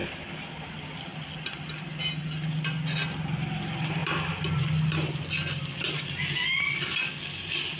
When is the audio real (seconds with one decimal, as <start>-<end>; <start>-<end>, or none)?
0.0-7.8

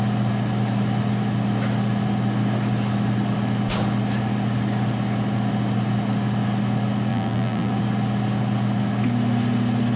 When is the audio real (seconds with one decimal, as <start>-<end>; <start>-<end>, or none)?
0.0-7.1; 7.7-10.0

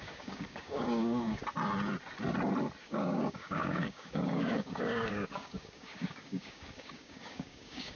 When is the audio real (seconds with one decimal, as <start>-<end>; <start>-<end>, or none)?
1.4-2.8

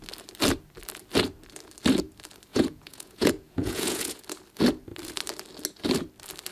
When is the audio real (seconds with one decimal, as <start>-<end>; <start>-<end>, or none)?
0.0-2.5; 4.2-6.5

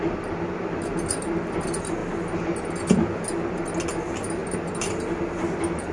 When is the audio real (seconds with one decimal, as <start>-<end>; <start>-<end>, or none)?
0.0-5.9